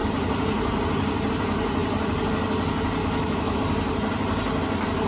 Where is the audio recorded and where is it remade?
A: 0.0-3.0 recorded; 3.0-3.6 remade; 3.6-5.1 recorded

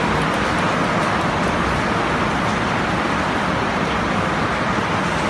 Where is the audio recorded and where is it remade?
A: 0.0-5.3 recorded

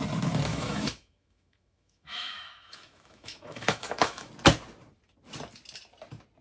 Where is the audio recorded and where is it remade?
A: 0.0-0.5 recorded; 0.5-4.3 remade; 4.3-6.4 recorded

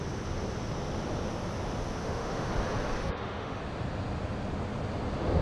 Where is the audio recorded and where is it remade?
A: 0.0-2.0 recorded; 2.0-2.5 remade; 2.5-3.0 recorded; 3.0-3.6 remade; 3.6-5.4 recorded

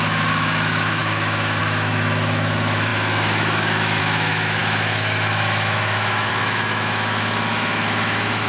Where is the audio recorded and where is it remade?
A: 0.0-8.5 remade